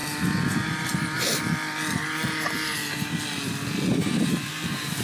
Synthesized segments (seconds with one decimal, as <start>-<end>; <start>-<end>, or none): 0.5-0.9; 3.9-5.0